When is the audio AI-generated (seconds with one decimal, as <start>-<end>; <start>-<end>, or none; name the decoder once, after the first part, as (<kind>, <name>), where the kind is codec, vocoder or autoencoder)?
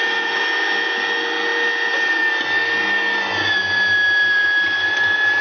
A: none